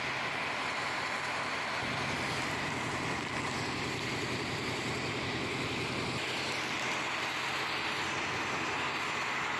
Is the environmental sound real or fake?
real